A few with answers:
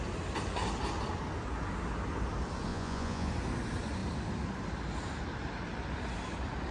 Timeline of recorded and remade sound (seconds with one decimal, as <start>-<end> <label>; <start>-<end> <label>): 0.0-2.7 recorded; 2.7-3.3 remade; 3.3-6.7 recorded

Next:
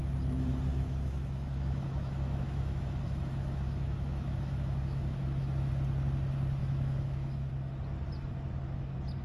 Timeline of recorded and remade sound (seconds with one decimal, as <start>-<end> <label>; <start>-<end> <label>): 0.0-0.7 recorded; 0.7-5.7 remade; 5.7-6.6 recorded; 6.6-7.5 remade; 7.5-9.2 recorded

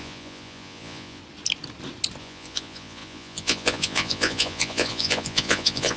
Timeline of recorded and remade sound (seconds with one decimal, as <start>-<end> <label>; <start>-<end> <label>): 0.0-1.2 remade; 1.2-2.2 recorded; 2.2-6.0 remade

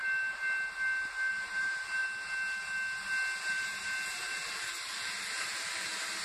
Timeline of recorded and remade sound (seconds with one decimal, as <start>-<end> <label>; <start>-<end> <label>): 0.0-1.3 recorded; 1.3-2.0 remade; 2.0-3.4 recorded; 3.4-6.2 remade

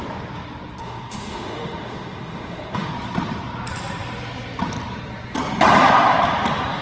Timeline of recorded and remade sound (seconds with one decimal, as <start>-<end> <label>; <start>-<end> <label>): 0.0-0.8 recorded; 0.8-2.9 remade; 2.9-6.8 recorded

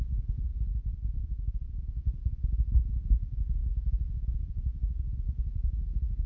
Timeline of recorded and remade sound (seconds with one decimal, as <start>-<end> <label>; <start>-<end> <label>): 0.0-6.3 recorded

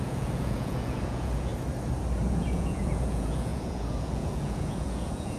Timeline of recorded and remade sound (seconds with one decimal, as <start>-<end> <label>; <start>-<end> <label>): 0.0-1.5 remade; 1.5-2.3 recorded; 2.3-5.4 remade

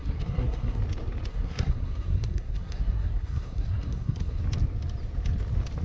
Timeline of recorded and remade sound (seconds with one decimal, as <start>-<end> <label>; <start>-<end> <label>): 0.0-0.8 remade; 0.8-1.3 recorded; 1.3-4.4 remade; 4.4-5.8 recorded